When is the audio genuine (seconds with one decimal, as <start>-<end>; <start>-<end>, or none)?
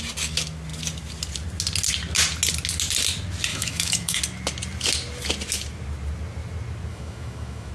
0.0-3.5; 4.2-6.9